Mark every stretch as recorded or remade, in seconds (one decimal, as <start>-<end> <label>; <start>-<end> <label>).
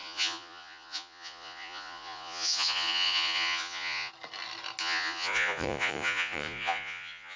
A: 0.0-4.1 remade; 4.1-4.8 recorded; 4.8-7.4 remade